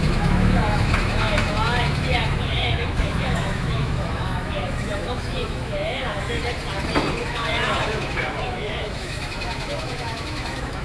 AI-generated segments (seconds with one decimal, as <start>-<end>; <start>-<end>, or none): 0.0-6.4; 7.2-10.8